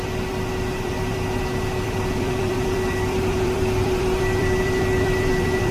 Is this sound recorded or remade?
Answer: remade